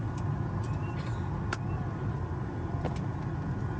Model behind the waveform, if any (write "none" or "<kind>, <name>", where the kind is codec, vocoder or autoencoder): none